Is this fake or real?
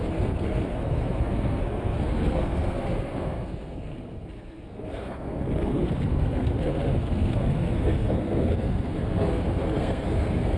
fake